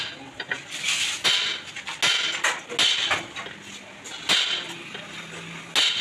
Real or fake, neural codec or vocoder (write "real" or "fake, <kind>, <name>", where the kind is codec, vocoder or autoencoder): real